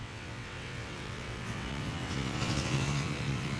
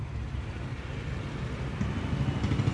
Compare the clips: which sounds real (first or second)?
second